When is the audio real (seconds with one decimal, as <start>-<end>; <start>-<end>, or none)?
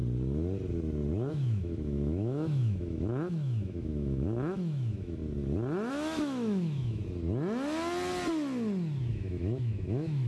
0.0-1.3; 5.2-5.9; 7.0-9.1